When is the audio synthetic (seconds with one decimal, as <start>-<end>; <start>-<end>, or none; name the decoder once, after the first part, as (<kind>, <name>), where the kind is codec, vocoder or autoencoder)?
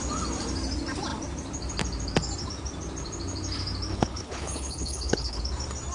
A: 3.9-5.4 (codec, HILCodec)